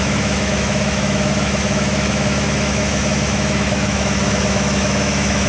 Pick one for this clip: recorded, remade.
remade